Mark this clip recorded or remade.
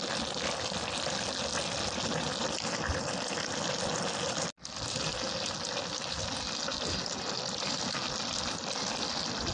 recorded